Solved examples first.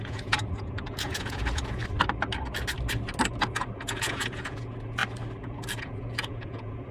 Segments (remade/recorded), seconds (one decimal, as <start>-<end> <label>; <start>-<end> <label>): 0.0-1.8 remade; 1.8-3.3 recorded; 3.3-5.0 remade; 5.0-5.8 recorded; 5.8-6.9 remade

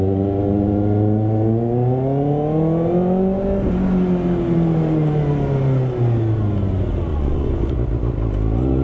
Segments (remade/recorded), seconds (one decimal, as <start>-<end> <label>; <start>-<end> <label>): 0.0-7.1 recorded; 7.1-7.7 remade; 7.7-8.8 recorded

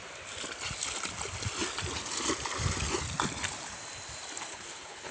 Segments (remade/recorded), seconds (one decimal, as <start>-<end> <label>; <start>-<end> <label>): 0.0-4.5 recorded; 4.5-5.1 remade